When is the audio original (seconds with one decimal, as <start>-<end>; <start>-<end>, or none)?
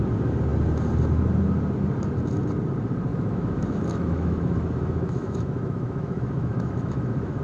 0.0-3.1